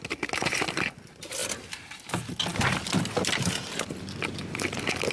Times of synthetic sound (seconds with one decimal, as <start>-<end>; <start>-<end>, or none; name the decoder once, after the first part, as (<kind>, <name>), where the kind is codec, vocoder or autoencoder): none